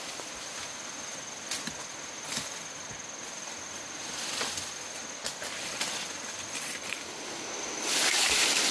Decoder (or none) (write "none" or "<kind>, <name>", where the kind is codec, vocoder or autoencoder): none